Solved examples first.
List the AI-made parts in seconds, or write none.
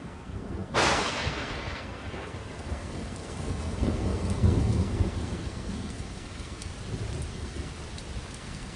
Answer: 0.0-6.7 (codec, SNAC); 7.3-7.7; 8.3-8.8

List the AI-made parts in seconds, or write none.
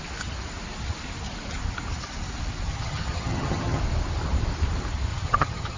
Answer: 2.7-3.8 (vocoder, HiFi-GAN); 5.1-5.8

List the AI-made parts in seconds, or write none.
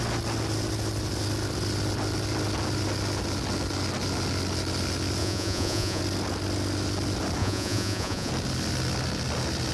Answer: 5.2-6.0 (vocoder, Vocos); 7.4-8.3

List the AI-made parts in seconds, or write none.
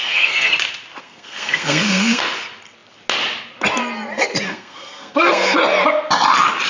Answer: 0.0-0.5 (codec, SNAC); 1.0-2.2; 4.5-5.6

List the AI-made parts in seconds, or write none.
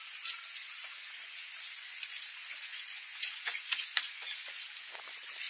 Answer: 0.8-1.5 (vocoder, Vocos); 2.7-4.6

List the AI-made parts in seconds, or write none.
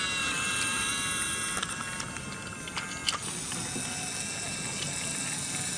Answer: none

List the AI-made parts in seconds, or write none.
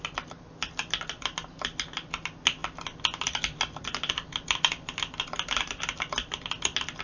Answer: none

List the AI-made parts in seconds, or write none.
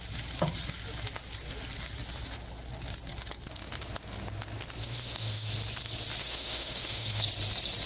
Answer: 4.8-5.5 (autoencoder, DAC-VAE); 6.2-7.2